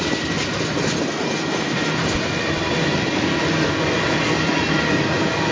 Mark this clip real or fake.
real